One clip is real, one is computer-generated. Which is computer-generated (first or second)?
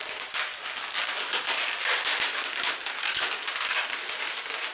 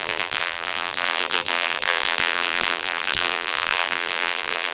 second